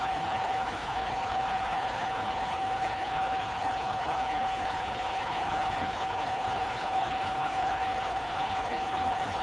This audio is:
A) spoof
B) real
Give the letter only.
A